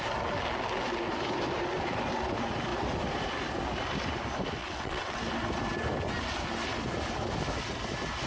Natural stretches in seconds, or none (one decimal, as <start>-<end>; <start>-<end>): 0.0-4.6; 5.2-8.3